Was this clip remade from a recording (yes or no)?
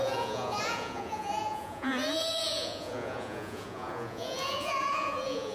yes